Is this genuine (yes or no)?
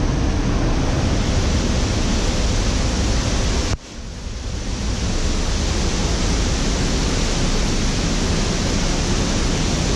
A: yes